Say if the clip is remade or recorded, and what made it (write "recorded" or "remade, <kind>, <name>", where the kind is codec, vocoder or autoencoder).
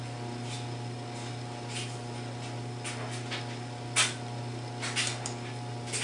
recorded